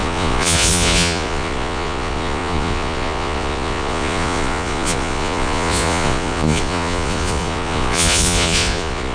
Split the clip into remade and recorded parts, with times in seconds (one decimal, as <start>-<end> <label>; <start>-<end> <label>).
0.0-9.1 remade